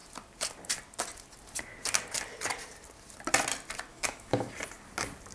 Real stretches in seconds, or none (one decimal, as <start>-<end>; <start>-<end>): 0.0-3.9; 4.5-5.3